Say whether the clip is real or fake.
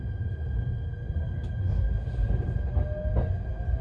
real